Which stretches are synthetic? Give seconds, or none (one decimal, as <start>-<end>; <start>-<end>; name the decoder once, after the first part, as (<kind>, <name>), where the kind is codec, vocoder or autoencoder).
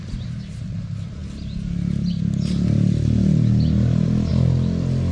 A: none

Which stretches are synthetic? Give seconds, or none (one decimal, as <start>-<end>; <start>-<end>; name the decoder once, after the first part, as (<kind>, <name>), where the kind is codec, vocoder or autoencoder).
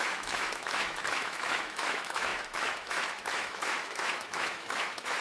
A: 0.0-5.2 (autoencoder, DAC-VAE)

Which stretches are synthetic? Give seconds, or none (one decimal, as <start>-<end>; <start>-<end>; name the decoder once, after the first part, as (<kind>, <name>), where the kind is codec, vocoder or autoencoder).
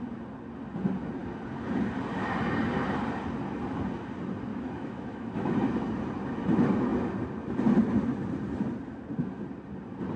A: 4.5-5.6 (autoencoder, DAC-VAE)